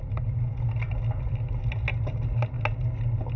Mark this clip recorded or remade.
recorded